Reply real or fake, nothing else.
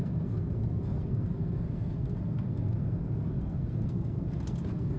fake